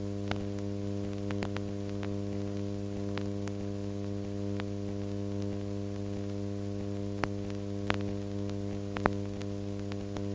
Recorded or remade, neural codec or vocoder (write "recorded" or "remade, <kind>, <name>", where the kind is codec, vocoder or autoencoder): recorded